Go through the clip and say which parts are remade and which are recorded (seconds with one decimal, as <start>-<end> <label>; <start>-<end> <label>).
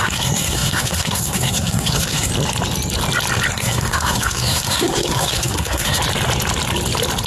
0.0-2.3 remade; 2.3-3.5 recorded; 3.5-6.0 remade; 6.0-7.3 recorded